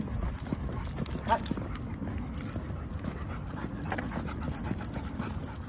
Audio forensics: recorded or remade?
recorded